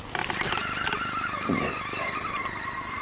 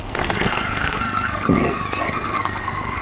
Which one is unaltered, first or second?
first